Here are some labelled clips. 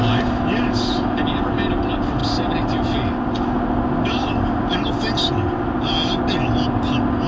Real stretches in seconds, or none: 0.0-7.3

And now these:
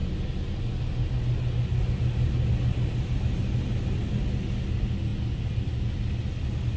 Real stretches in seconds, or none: 0.0-6.8

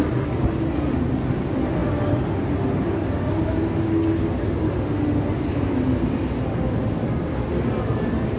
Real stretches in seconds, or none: 0.0-8.4

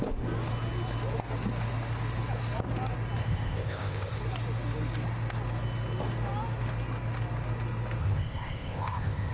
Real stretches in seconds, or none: 0.0-3.2; 4.2-8.0

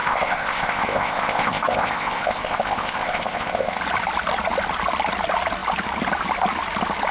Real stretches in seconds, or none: 3.8-7.1